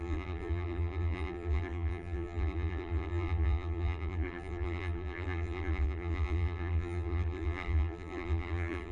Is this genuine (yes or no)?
no